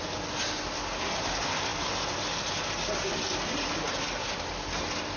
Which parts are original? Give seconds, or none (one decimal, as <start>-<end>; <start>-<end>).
0.0-5.2